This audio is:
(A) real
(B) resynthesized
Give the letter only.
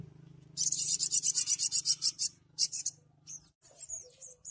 B